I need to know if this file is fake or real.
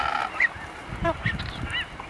real